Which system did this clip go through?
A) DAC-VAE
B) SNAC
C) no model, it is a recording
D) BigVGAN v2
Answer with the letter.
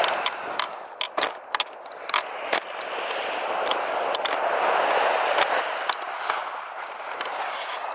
C